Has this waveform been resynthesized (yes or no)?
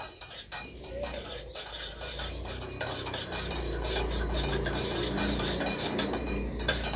yes